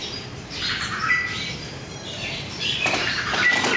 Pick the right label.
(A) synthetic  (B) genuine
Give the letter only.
A